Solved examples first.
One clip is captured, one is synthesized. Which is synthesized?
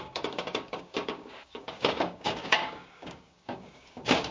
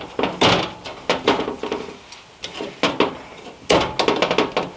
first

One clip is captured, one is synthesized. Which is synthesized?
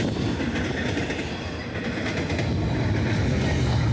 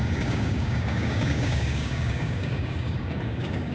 second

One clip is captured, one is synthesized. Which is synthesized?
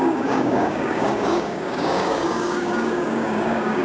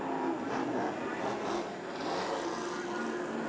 first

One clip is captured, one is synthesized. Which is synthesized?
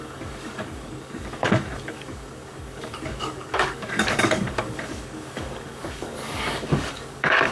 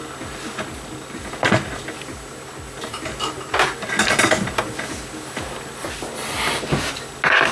first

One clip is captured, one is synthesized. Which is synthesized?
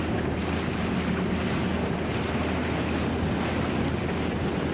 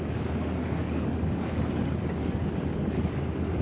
second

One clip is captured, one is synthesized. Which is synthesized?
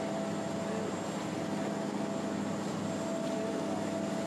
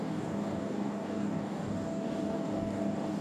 second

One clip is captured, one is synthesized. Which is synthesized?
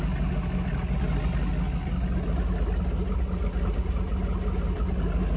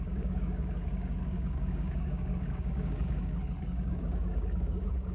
second